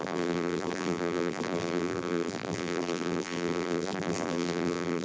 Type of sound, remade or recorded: remade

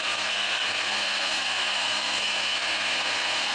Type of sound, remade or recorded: remade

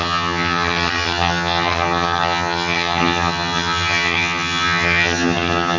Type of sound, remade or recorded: remade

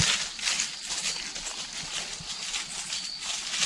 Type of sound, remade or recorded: recorded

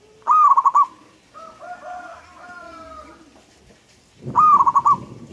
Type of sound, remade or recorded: recorded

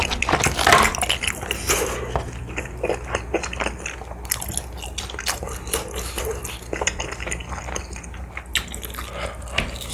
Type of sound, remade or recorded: recorded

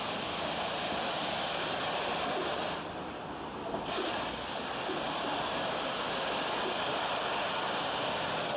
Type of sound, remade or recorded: recorded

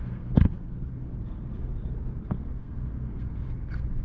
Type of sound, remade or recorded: remade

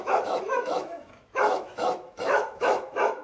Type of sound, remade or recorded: remade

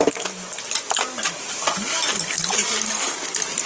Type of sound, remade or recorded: recorded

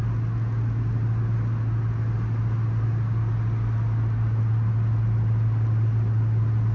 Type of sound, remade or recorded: recorded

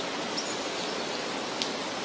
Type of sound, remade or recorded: recorded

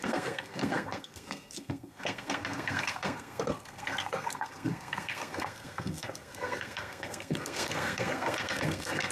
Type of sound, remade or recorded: remade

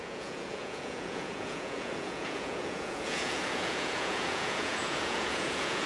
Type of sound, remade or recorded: remade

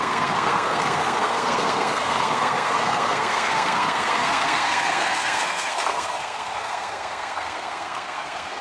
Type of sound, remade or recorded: remade